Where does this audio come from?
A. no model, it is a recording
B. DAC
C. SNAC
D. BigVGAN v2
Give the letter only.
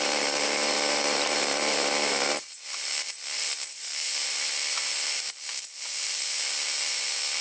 D